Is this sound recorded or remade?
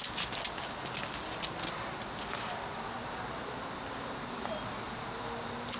recorded